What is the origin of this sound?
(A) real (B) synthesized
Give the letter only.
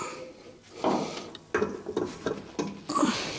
A